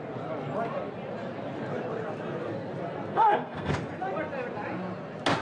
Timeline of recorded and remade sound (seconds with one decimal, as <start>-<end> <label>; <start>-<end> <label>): 0.0-3.1 recorded; 3.1-3.7 remade; 3.7-5.4 recorded